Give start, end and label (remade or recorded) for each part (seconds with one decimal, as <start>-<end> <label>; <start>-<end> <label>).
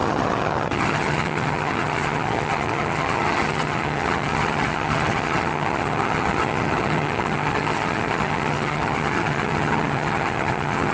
0.0-10.9 remade